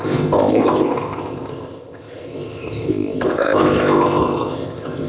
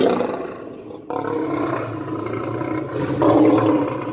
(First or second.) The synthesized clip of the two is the first